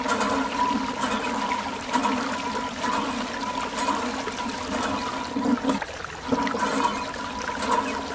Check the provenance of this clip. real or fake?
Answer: real